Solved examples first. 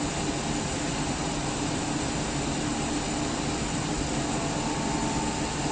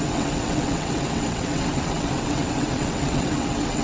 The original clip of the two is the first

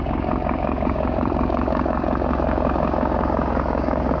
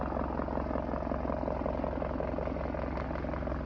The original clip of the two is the second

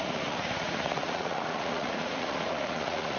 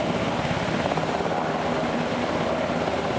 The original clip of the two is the second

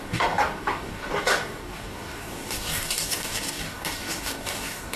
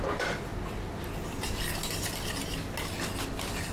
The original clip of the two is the second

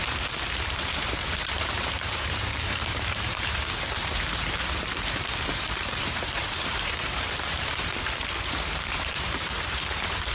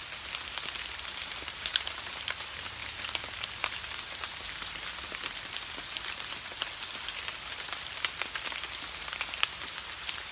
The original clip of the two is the second